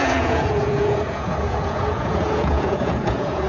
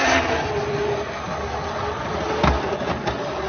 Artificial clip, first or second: first